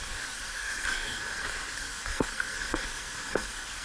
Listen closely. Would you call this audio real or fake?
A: fake